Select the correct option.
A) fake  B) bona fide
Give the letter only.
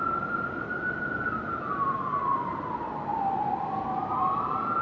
A